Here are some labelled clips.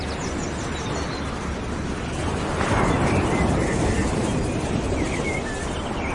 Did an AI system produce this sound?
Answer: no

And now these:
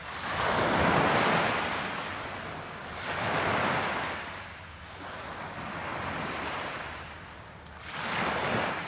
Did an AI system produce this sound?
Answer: no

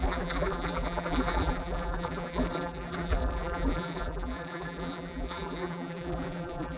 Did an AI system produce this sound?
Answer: yes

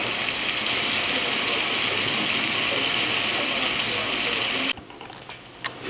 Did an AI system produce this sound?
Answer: no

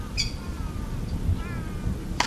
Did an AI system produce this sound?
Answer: no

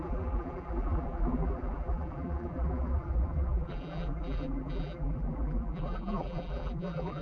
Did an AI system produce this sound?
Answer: yes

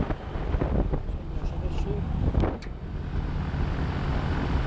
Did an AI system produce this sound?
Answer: yes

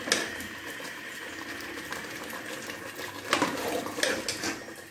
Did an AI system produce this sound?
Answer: no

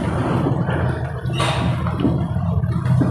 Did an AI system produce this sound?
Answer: no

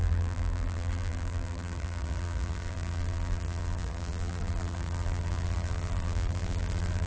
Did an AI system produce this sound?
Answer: yes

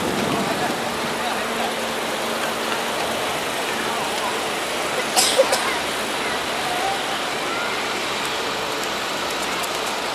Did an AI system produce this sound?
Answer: no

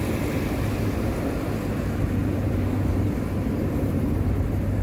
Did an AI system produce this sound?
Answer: yes